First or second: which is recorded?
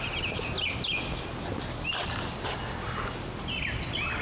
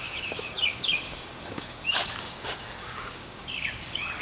first